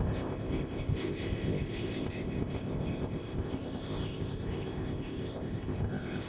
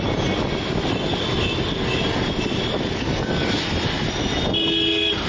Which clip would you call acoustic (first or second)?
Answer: second